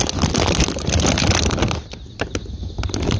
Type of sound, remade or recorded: recorded